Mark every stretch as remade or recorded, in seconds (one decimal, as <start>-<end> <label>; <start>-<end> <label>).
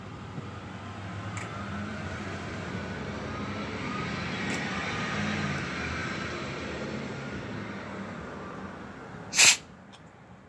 0.0-1.9 recorded; 1.9-2.7 remade; 2.7-6.0 recorded; 6.0-7.4 remade; 7.4-10.5 recorded